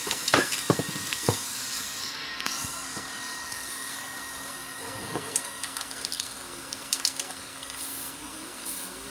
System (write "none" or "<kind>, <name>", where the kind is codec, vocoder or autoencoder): codec, SNAC